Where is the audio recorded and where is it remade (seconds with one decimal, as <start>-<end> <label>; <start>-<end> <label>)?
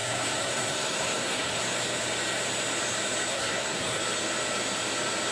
0.0-1.6 remade; 1.6-3.3 recorded; 3.3-4.0 remade; 4.0-5.3 recorded